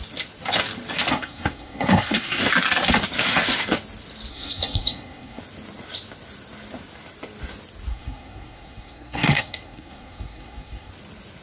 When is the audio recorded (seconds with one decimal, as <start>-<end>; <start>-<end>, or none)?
0.0-1.1; 2.4-4.3; 5.4-7.9; 10.9-11.4